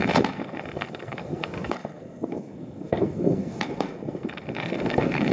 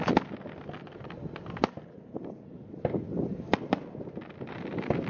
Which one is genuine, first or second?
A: second